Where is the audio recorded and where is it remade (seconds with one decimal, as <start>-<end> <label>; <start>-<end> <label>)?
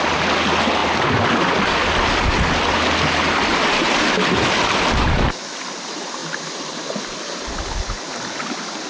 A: 0.0-8.9 recorded